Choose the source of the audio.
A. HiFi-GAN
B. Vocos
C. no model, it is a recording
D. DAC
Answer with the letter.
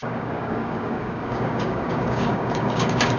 D